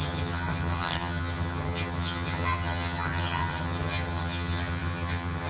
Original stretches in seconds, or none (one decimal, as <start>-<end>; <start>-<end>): none